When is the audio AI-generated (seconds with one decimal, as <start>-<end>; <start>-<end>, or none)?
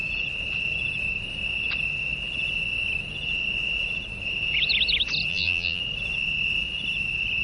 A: 5.3-5.8